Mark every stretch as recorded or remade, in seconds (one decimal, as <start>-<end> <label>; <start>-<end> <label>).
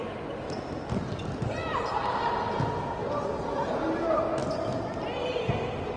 0.0-6.0 recorded